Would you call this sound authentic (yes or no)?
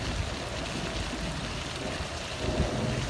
yes